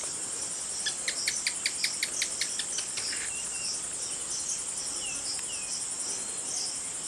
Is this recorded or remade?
recorded